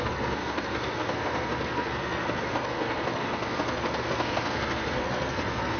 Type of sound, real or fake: fake